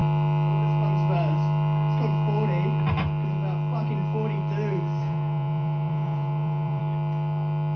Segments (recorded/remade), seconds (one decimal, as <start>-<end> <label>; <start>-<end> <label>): 0.0-5.0 recorded; 5.0-6.8 remade; 6.8-7.8 recorded